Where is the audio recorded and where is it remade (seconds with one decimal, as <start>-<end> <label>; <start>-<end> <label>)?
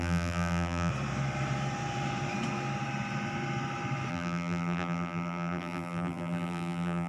0.0-0.9 remade; 0.9-4.1 recorded; 4.1-7.1 remade